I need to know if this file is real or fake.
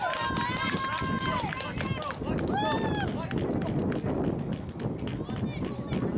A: real